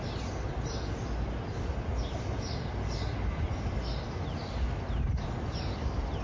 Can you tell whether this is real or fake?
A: real